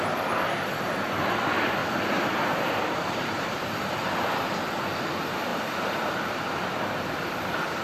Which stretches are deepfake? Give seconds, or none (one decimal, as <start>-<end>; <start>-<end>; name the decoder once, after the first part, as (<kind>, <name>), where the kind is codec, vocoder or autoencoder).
1.8-4.5 (vocoder, BigVGAN v2); 5.5-7.8